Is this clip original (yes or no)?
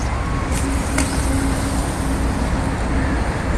yes